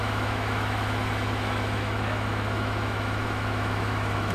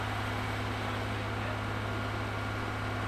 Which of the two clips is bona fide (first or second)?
second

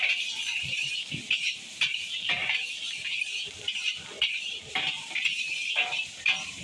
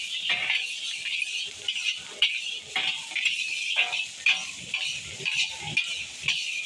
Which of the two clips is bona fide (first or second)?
second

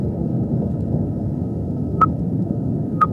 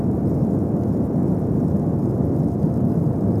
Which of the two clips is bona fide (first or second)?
second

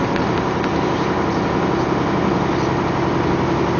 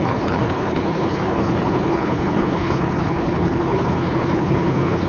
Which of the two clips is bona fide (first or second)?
first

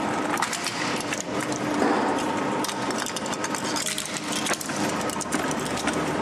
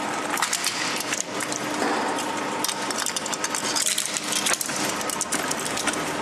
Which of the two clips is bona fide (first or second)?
second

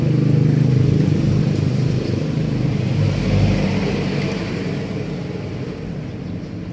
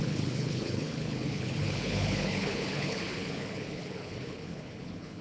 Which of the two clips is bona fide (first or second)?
first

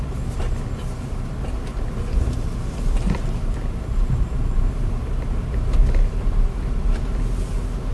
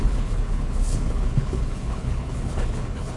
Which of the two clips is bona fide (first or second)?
first